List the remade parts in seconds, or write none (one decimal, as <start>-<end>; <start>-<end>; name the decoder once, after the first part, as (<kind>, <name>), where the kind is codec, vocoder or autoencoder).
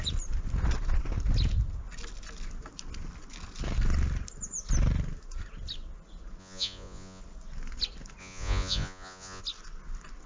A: 6.4-7.2 (vocoder, Vocos); 8.2-9.4